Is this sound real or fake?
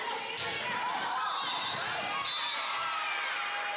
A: real